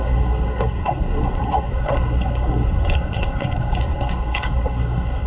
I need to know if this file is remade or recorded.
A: remade